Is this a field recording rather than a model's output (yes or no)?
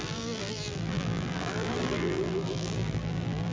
no